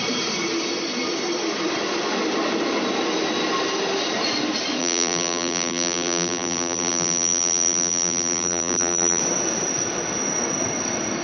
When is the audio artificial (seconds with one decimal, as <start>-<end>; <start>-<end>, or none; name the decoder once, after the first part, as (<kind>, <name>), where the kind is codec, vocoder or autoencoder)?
4.8-9.2 (vocoder, BigVGAN v2)